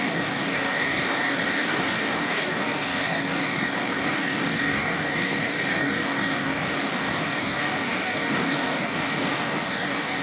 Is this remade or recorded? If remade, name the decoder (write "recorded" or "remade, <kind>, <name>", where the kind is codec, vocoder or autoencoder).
remade, codec, DAC